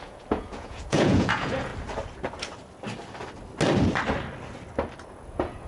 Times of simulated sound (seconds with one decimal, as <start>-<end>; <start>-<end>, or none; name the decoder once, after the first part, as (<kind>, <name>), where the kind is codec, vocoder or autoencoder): 0.0-1.7 (vocoder, Vocos); 5.1-5.7